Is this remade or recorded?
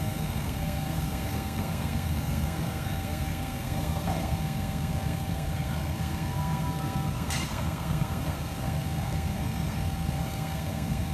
remade